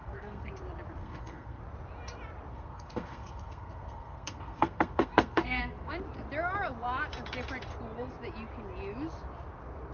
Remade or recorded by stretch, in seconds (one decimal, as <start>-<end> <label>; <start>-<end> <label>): 0.0-0.5 remade; 0.5-1.0 recorded; 1.0-1.6 remade; 1.6-2.5 recorded; 2.5-5.9 remade; 5.9-9.9 recorded